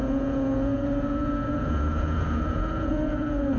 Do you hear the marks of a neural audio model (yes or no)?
yes